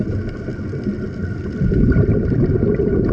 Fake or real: real